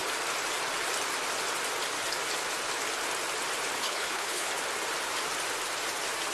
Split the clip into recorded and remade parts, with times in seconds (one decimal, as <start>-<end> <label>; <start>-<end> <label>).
0.0-3.8 recorded; 3.8-4.5 remade; 4.5-6.3 recorded